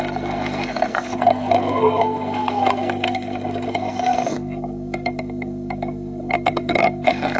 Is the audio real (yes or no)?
no